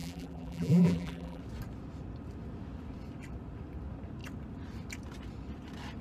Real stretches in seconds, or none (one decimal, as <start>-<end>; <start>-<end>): 1.4-6.0